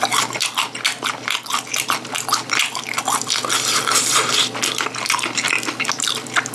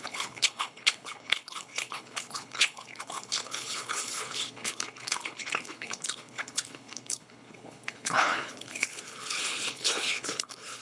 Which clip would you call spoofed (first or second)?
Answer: second